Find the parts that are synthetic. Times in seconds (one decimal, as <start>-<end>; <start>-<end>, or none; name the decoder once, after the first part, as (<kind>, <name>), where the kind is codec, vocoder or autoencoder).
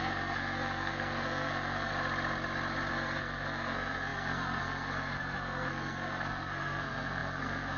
0.0-1.9 (codec, SNAC); 2.9-7.8